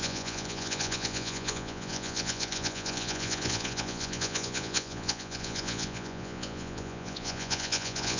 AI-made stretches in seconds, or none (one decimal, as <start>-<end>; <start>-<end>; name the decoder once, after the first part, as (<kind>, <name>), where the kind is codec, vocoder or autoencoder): 0.0-8.2 (vocoder, Vocos)

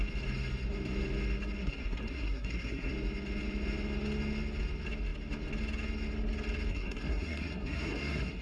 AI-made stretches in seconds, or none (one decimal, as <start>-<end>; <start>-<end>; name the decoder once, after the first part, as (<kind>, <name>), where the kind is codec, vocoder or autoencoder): 1.6-2.9 (codec, SNAC); 6.7-8.4